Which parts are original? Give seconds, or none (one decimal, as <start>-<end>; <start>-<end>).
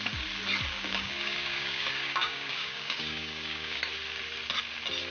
0.0-0.7; 3.8-5.1